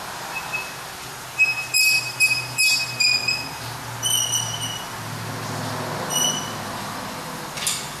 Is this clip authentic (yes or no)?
yes